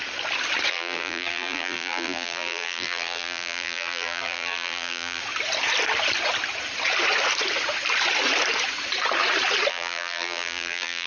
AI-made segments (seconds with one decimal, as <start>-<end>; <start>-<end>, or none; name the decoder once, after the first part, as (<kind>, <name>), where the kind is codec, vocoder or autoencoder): 0.7-5.2 (vocoder, BigVGAN v2); 9.7-11.1